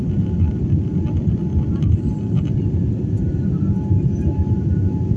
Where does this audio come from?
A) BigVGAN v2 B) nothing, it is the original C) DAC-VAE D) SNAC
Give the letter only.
B